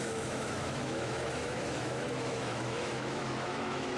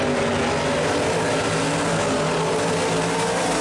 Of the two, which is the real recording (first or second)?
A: second